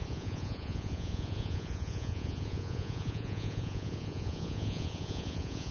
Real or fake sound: fake